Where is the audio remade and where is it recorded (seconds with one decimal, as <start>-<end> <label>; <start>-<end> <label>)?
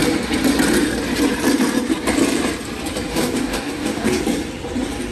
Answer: 0.0-3.1 recorded; 3.1-4.2 remade; 4.2-5.1 recorded